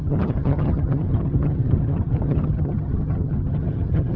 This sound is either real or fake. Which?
fake